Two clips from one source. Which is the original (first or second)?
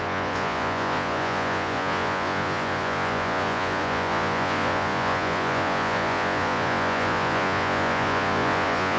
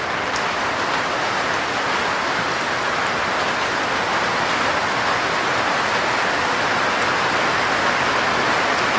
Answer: second